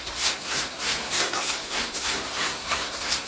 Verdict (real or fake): fake